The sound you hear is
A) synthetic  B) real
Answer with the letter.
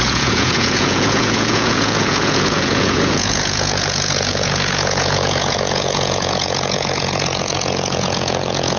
A